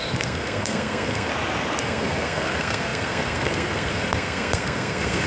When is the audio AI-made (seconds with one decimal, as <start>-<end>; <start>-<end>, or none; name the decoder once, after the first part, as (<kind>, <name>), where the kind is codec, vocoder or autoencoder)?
0.0-1.3 (codec, SNAC); 1.8-5.3